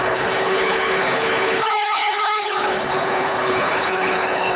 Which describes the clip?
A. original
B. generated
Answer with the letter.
B